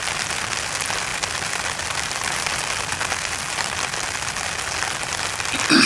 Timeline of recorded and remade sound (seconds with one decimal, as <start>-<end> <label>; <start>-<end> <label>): 0.0-5.9 recorded